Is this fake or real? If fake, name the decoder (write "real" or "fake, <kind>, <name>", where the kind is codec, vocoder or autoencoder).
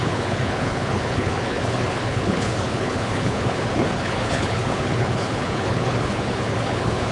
fake, codec, HILCodec